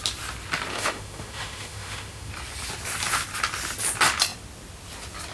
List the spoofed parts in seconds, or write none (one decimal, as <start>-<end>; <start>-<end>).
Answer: 0.7-2.3